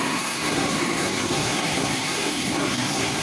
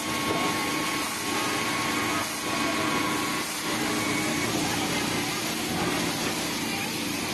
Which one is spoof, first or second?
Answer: first